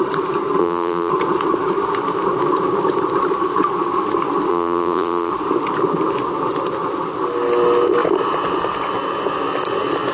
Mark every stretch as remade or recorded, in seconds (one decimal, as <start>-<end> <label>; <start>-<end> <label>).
0.0-0.6 recorded; 0.6-1.1 remade; 1.1-4.5 recorded; 4.5-5.3 remade; 5.3-10.1 recorded

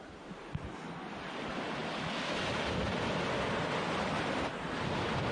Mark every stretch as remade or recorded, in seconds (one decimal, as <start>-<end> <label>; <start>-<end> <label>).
0.0-5.3 recorded

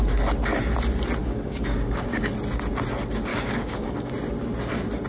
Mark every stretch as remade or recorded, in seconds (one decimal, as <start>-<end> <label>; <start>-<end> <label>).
0.0-1.2 recorded; 1.2-2.3 remade; 2.3-3.3 recorded; 3.3-4.1 remade; 4.1-5.1 recorded